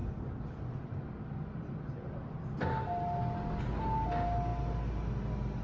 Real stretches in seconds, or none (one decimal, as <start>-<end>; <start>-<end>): 0.0-5.6